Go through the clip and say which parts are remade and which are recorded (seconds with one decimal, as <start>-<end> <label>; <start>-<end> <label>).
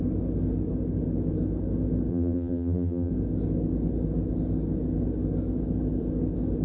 0.0-2.1 recorded; 2.1-3.1 remade; 3.1-6.6 recorded